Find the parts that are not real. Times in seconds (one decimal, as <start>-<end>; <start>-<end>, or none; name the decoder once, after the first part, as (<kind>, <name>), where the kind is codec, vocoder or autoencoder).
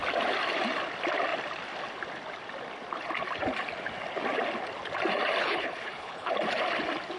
5.4-6.3 (codec, HILCodec)